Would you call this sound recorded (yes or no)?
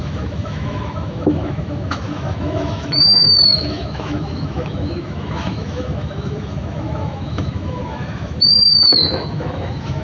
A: no